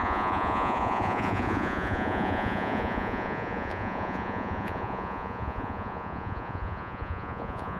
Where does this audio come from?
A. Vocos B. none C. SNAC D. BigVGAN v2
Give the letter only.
A